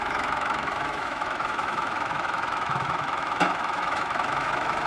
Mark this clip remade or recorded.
remade